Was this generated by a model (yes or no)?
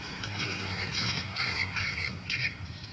yes